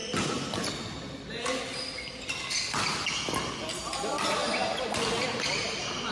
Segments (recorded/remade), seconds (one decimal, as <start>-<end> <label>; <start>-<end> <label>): 0.0-6.1 recorded